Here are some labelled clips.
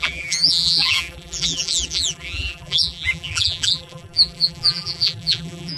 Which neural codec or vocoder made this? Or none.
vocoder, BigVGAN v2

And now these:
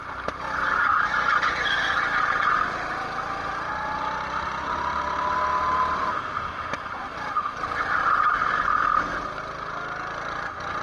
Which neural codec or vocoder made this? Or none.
none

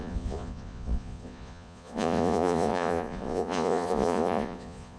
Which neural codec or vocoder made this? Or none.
vocoder, Vocos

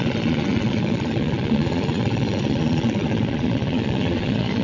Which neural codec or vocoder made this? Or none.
vocoder, Vocos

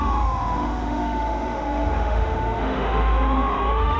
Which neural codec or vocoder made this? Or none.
autoencoder, DAC-VAE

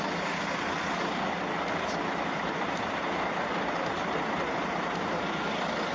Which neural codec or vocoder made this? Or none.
vocoder, BigVGAN v2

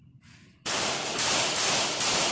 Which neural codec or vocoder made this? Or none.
none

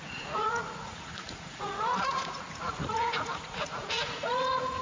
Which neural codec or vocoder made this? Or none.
vocoder, Vocos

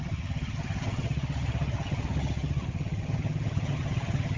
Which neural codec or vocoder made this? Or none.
vocoder, HiFi-GAN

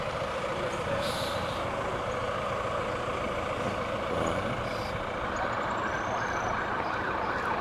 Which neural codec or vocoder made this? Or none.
vocoder, BigVGAN v2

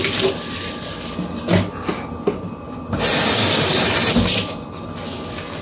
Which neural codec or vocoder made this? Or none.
none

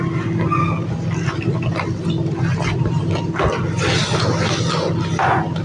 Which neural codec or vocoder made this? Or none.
none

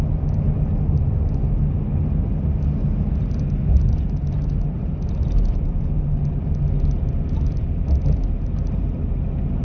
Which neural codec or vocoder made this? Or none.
none